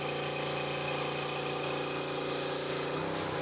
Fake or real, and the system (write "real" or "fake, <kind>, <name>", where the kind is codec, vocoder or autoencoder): real